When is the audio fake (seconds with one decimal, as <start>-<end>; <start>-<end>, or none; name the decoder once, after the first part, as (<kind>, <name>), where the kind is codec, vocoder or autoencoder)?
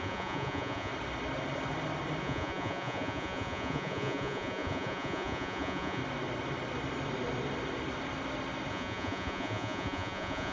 0.0-0.9 (vocoder, Vocos); 2.2-6.0; 8.7-10.5